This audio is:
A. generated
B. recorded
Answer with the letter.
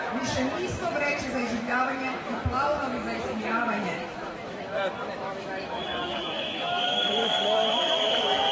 A